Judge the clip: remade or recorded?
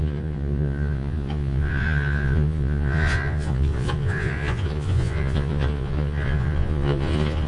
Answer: remade